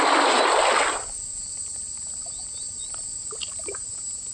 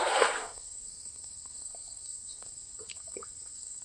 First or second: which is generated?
second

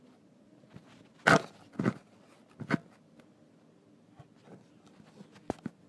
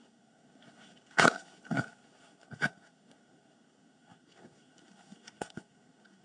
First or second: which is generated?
second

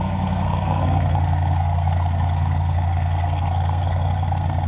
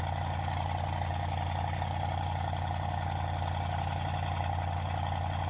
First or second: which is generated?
first